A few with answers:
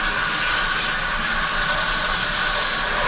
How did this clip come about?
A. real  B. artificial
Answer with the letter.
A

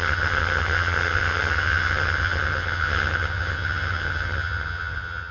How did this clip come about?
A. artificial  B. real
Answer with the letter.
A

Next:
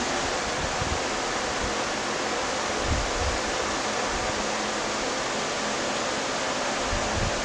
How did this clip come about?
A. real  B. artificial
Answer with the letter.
A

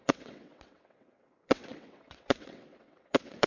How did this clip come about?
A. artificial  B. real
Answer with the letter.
A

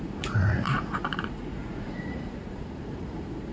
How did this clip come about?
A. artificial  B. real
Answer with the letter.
A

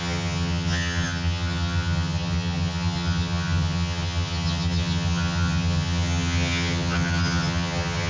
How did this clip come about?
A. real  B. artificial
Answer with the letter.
B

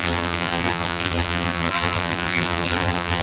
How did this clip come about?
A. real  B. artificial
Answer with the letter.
B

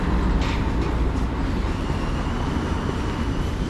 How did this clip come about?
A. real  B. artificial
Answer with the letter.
A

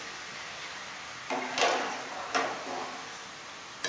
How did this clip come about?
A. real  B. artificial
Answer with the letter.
A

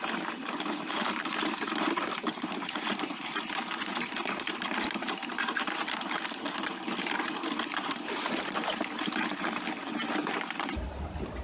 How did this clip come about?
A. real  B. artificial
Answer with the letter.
B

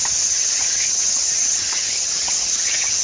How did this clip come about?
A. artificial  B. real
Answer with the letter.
A